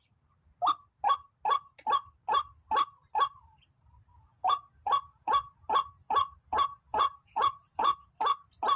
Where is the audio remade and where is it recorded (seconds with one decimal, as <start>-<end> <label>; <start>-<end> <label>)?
0.0-4.1 recorded; 4.1-8.1 remade; 8.1-8.8 recorded